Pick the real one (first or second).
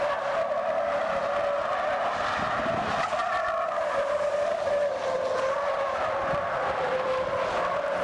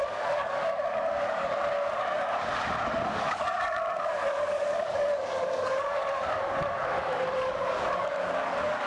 first